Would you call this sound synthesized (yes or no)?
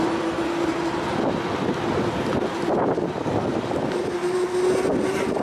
no